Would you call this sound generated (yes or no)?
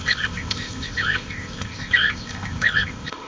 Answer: yes